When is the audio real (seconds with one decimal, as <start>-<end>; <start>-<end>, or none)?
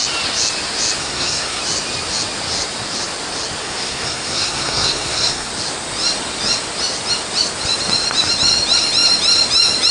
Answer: 0.0-1.0; 1.6-3.6; 5.5-9.9